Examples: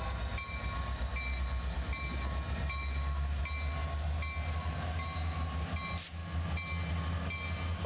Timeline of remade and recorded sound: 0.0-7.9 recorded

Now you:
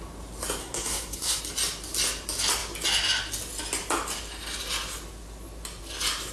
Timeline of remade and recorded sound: 0.0-0.6 recorded; 0.6-1.4 remade; 1.4-6.3 recorded

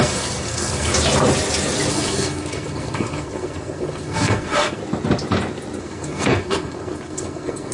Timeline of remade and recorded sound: 0.0-0.9 remade; 0.9-1.9 recorded; 1.9-4.8 remade; 4.8-5.8 recorded; 5.8-7.7 remade

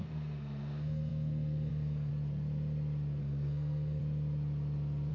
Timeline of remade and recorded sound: 0.0-2.1 remade; 2.1-3.2 recorded; 3.2-4.0 remade; 4.0-5.1 recorded

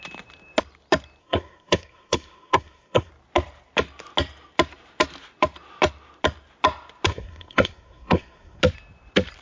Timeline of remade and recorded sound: 0.0-1.2 recorded; 1.2-3.1 remade; 3.1-7.1 recorded; 7.1-8.6 remade; 8.6-9.4 recorded

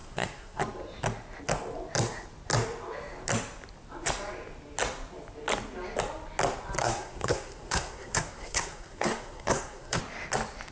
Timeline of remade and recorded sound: 0.0-0.6 remade; 0.6-6.8 recorded; 6.8-10.0 remade; 10.0-10.7 recorded